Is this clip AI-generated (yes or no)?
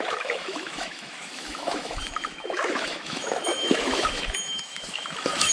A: yes